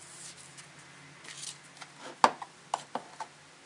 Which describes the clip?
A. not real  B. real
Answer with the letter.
B